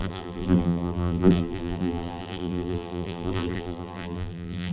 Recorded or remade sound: remade